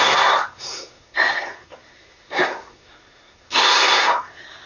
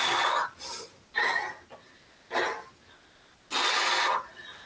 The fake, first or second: first